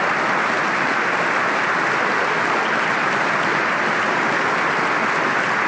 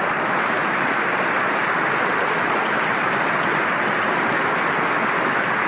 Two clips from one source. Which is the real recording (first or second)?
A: first